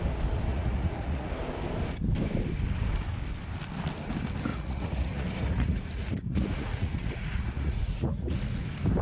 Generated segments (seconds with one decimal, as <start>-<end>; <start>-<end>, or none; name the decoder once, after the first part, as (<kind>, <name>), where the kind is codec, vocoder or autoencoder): 0.5-1.3 (vocoder, Vocos); 4.5-8.4